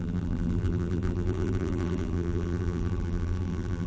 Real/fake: fake